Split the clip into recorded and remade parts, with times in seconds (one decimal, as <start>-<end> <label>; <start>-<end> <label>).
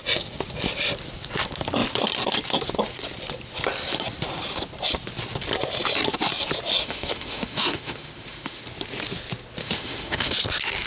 0.0-6.8 recorded; 6.8-8.6 remade; 8.6-9.6 recorded; 9.6-10.3 remade; 10.3-10.9 recorded